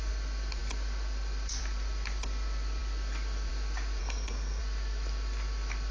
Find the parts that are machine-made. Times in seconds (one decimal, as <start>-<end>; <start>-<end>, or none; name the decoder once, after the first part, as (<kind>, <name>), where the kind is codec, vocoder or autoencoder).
4.0-4.6 (codec, SNAC)